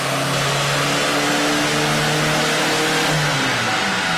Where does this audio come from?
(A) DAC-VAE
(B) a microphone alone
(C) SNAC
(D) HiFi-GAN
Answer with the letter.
B